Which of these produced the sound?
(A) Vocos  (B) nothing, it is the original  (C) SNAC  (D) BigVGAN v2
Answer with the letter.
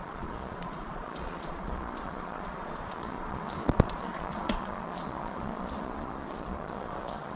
A